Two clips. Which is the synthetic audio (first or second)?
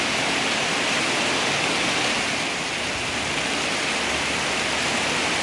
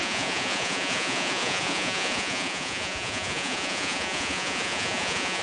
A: second